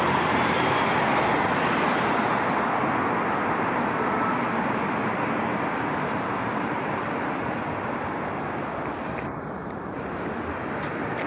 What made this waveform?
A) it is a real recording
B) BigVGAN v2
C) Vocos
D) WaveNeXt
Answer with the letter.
A